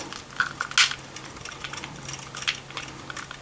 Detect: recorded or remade recorded